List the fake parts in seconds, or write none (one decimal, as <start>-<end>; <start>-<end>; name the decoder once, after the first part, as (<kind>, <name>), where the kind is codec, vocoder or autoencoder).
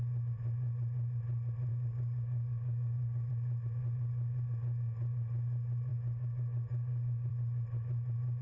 1.7-3.3 (codec, DAC); 5.9-7.3